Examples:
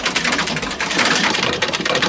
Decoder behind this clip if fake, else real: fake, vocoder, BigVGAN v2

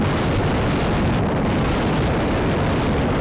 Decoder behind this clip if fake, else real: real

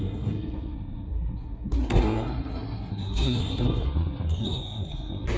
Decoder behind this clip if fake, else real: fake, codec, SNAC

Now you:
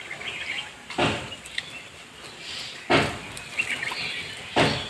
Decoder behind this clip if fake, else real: real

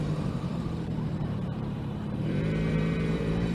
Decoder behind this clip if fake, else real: fake, vocoder, BigVGAN v2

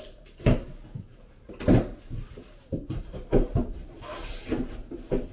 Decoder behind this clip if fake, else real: fake, vocoder, BigVGAN v2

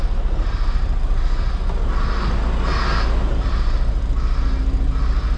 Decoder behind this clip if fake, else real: real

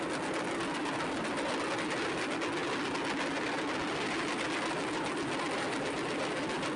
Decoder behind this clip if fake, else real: real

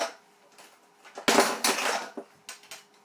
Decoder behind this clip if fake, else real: real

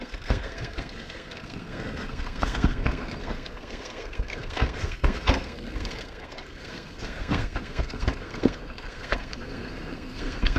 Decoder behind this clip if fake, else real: fake, codec, SNAC